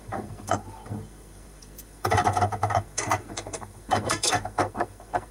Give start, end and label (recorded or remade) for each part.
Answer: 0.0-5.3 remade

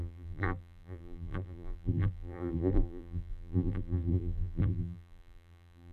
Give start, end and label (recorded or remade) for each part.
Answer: 0.0-5.9 remade

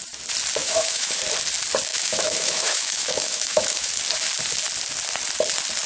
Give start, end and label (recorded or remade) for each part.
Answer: 0.0-0.6 recorded; 0.6-1.2 remade; 1.2-1.9 recorded; 1.9-3.9 remade; 3.9-5.9 recorded

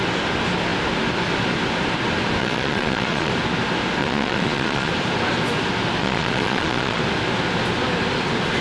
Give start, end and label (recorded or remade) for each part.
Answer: 0.0-2.4 recorded; 2.4-3.3 remade; 3.3-4.0 recorded; 4.0-4.9 remade; 4.9-6.0 recorded; 6.0-7.0 remade; 7.0-8.6 recorded

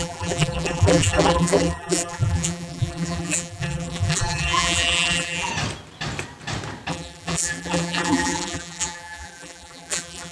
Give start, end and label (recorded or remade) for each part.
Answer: 0.0-5.5 remade; 5.5-6.9 recorded; 6.9-10.3 remade

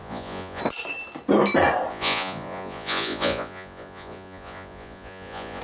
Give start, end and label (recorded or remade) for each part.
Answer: 0.0-0.6 remade; 0.6-1.9 recorded; 1.9-5.6 remade

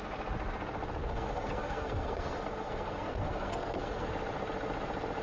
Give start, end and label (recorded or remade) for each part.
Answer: 0.0-1.0 recorded; 1.0-4.1 remade; 4.1-5.2 recorded

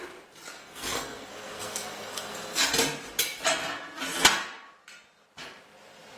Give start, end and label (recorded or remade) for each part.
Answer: 0.0-0.6 recorded; 0.6-2.6 remade; 2.6-6.2 recorded